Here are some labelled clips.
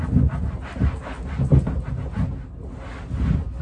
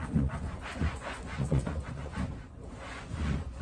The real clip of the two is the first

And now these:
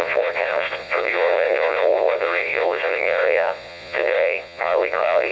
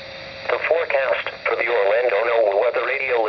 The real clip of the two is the second